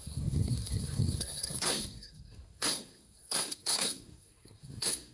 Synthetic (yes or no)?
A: yes